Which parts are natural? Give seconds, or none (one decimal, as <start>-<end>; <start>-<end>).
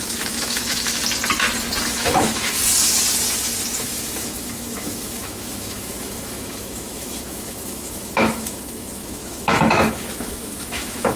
1.0-1.8; 2.6-3.8